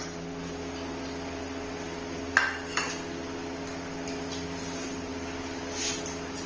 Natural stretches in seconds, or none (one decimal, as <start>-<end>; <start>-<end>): 0.0-6.5